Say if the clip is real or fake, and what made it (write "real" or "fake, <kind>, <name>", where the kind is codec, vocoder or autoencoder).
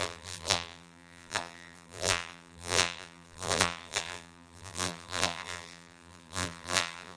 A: fake, vocoder, BigVGAN v2